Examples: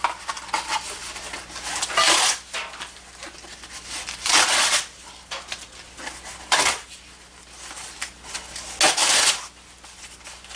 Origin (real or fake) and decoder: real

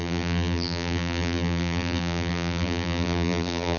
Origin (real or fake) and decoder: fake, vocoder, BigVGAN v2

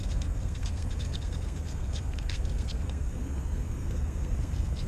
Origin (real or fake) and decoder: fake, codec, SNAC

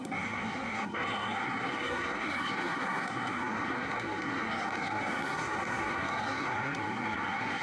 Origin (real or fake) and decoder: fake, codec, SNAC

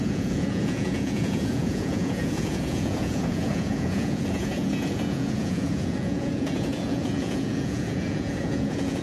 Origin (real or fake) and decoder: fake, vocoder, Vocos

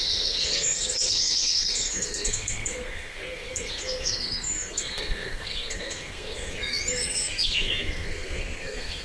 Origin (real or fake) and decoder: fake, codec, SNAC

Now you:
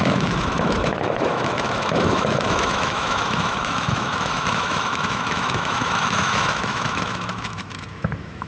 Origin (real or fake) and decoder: fake, autoencoder, DAC-VAE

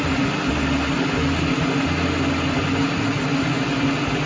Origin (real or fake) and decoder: real